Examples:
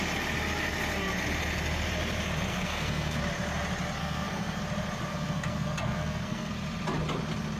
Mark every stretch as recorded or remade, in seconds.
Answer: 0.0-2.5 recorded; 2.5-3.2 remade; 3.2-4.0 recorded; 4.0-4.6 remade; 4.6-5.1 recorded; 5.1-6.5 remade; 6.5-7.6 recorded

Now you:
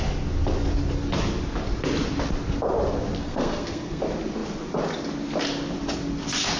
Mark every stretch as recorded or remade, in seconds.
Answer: 0.0-3.2 recorded; 3.2-4.0 remade; 4.0-6.6 recorded